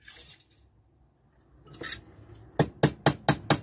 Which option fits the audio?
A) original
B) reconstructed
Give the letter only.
A